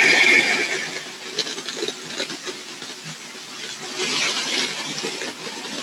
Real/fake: real